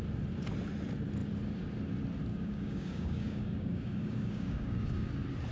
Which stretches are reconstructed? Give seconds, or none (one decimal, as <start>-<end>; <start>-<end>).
2.3-5.1